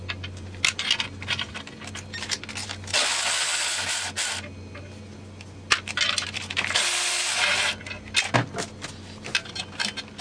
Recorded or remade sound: recorded